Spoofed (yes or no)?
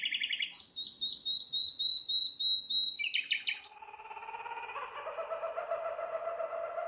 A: no